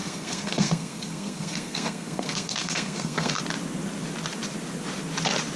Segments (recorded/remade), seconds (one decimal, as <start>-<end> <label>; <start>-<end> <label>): 0.0-3.4 remade; 3.4-5.6 recorded